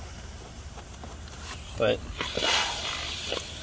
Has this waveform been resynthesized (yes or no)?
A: no